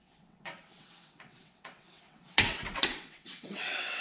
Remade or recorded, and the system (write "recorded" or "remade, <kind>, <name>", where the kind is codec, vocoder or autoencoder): remade, vocoder, WaveNeXt